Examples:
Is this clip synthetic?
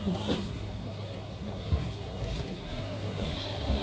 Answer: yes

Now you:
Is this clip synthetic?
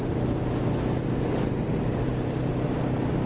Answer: no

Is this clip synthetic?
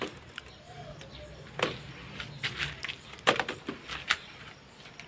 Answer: no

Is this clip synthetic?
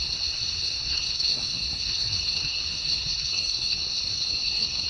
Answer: yes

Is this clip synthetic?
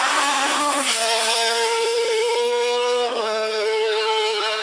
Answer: yes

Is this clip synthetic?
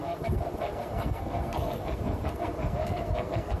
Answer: yes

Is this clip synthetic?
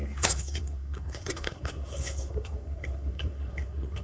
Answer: yes